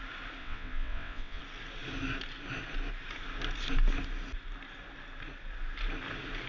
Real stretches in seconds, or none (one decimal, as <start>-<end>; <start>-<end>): 0.0-0.4; 1.4-6.5